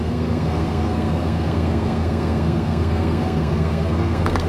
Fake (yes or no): yes